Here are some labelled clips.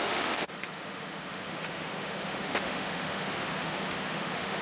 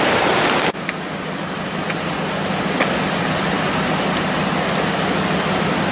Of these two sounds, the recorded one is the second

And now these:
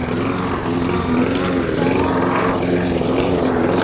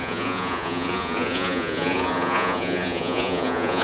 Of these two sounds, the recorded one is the first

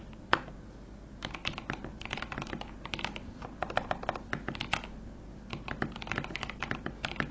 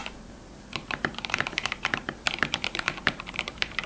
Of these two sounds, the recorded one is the first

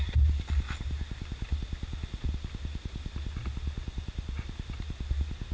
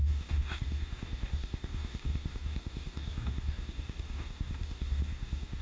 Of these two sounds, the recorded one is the first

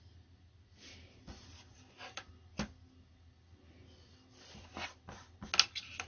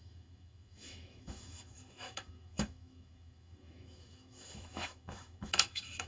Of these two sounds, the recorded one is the first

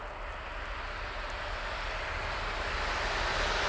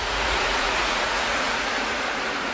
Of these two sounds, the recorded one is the first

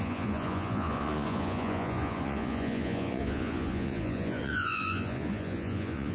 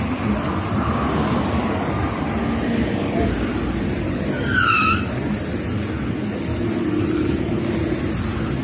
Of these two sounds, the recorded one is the second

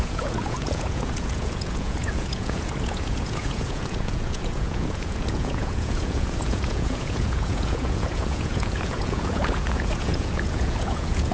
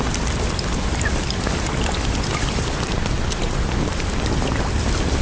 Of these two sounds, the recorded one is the second